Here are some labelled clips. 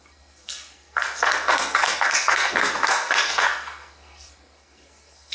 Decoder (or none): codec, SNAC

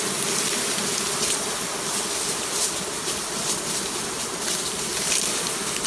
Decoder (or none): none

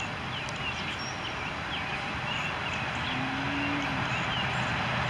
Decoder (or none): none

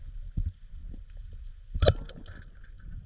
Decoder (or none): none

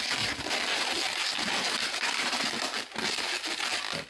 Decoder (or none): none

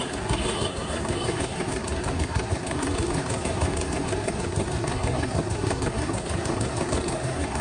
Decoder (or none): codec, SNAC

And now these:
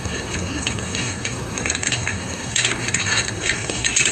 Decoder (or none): codec, SNAC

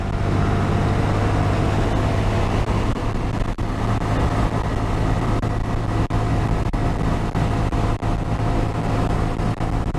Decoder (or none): none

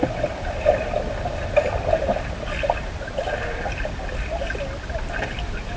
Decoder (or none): none